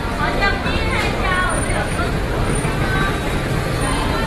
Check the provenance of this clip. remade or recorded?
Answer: recorded